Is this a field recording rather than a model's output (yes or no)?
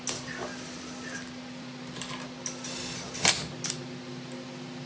yes